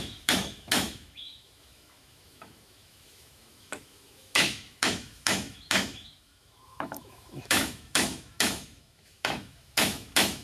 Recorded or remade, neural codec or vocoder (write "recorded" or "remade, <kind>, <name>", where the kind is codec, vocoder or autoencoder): remade, autoencoder, DAC-VAE